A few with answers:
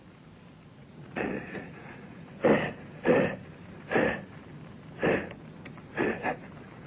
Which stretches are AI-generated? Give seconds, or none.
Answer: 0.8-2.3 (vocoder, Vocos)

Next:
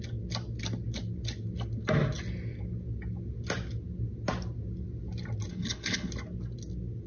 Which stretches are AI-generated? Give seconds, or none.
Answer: 5.5-6.1 (codec, HILCodec)

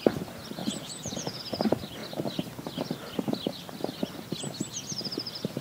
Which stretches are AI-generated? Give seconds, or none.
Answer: 0.6-1.4 (vocoder, Vocos)

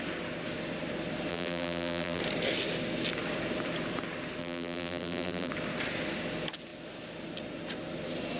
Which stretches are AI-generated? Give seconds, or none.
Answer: 1.3-2.2 (vocoder, BigVGAN v2); 4.4-5.5

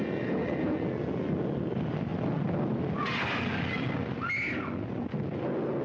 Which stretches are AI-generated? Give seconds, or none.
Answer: none